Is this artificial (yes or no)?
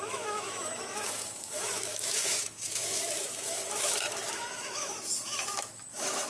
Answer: yes